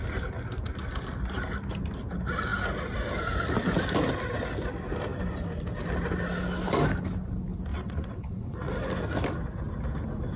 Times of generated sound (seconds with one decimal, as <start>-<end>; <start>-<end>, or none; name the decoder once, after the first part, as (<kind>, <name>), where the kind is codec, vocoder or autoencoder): 7.7-8.7 (vocoder, WaveNeXt)